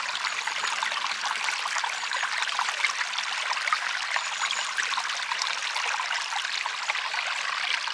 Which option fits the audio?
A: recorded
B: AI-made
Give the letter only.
A